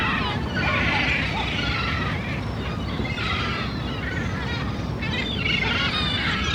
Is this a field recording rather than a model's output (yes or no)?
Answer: yes